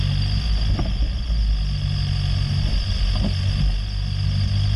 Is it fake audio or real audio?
real